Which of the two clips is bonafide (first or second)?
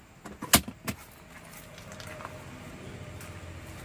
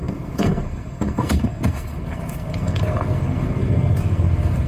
first